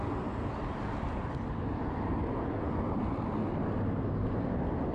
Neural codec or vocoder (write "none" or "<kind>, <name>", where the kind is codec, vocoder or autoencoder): none